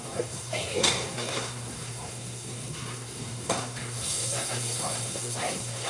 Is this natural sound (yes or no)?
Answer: no